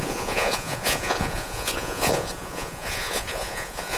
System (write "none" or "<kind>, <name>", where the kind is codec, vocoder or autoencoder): vocoder, Vocos